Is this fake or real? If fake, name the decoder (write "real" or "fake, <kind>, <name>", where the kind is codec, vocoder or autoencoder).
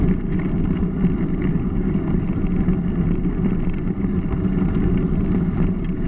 real